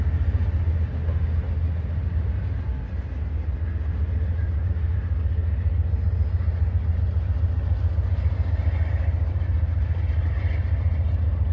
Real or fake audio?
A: real